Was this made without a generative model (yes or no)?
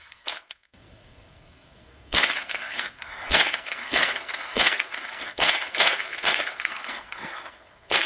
no